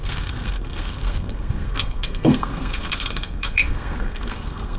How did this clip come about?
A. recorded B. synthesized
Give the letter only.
B